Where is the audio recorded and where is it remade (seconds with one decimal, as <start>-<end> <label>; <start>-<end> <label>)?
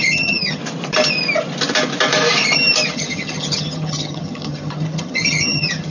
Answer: 0.0-0.6 remade; 0.6-2.9 recorded; 2.9-5.9 remade